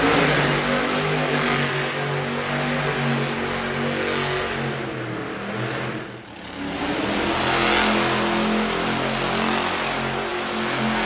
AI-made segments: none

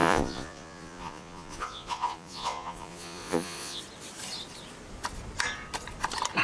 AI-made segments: 0.0-3.8 (vocoder, Vocos)

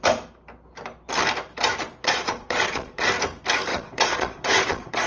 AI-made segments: 2.0-3.1 (vocoder, Vocos); 3.7-5.1

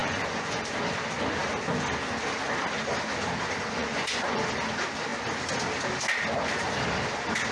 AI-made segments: 0.0-0.6 (vocoder, Vocos); 3.8-4.4

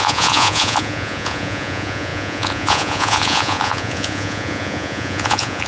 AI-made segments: 0.0-5.7 (vocoder, Vocos)

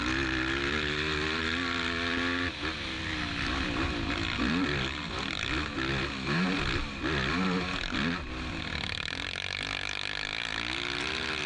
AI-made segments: none

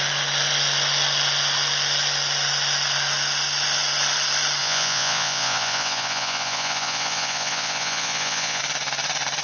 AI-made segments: 4.6-8.6 (vocoder, Vocos)